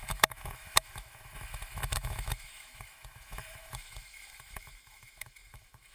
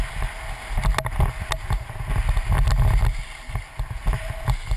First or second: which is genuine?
second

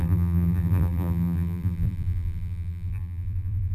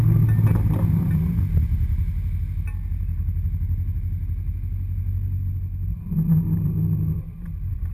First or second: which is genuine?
second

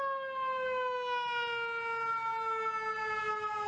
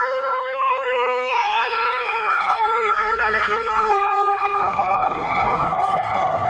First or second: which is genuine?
first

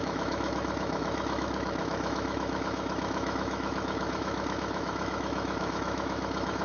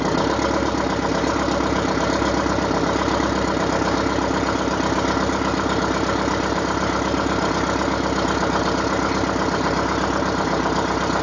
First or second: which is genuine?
second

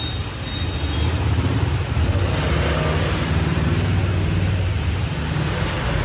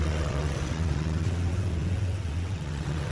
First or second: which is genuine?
first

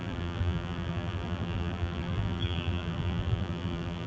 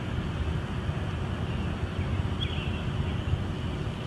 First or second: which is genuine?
second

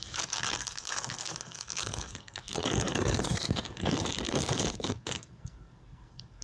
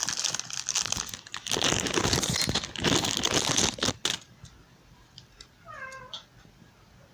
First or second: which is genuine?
second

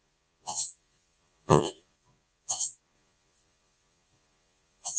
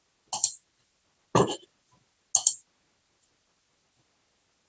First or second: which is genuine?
second